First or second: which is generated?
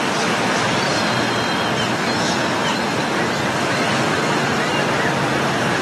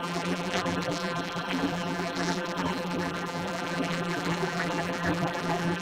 second